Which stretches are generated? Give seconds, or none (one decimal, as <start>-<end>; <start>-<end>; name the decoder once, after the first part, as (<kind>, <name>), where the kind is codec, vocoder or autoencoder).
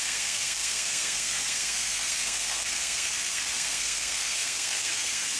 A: 0.0-5.4 (codec, SNAC)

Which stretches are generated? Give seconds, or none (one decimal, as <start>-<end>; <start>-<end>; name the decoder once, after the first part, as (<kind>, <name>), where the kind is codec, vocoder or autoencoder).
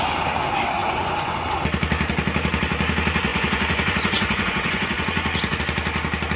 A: 0.8-1.5 (vocoder, Vocos); 3.3-5.6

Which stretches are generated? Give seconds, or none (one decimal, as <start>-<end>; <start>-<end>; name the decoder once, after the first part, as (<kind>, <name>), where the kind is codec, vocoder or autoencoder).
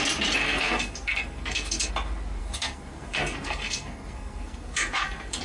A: 0.4-1.9 (codec, SNAC); 2.4-5.4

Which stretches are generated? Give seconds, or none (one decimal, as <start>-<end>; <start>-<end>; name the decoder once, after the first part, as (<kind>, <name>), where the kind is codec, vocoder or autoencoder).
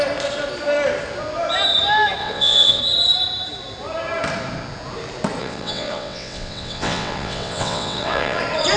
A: 2.2-2.8 (vocoder, WaveNeXt); 5.4-8.4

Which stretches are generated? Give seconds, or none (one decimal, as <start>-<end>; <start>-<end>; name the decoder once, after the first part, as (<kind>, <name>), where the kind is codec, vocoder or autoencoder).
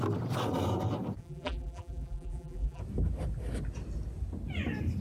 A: 1.2-2.8 (vocoder, BigVGAN v2)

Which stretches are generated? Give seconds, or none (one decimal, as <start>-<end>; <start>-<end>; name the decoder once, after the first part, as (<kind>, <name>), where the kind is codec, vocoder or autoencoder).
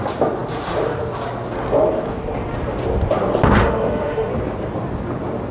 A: 3.6-4.3 (autoencoder, DAC-VAE)